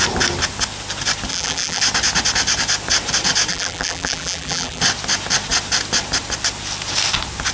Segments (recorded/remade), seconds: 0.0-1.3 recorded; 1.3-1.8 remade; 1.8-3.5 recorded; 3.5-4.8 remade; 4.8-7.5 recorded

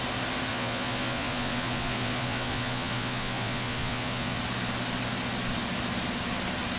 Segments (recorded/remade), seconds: 0.0-0.5 recorded; 0.5-4.4 remade; 4.4-6.8 recorded

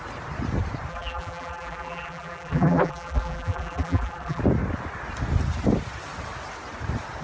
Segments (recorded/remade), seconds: 0.0-0.9 recorded; 0.9-4.4 remade; 4.4-7.2 recorded

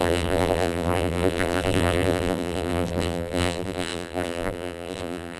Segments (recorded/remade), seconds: 0.0-5.4 remade

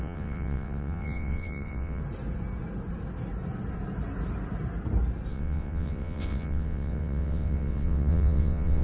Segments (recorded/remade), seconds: 0.0-2.0 remade; 2.0-5.3 recorded; 5.3-8.8 remade

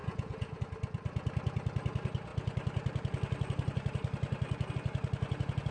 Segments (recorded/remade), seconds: 0.0-0.6 remade; 0.6-5.7 recorded